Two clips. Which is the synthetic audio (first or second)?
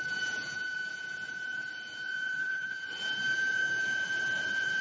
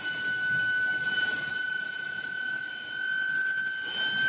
first